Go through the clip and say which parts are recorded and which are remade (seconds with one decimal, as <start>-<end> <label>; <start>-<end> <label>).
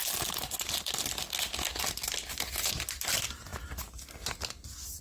0.0-5.0 recorded